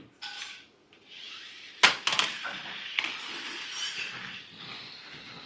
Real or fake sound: real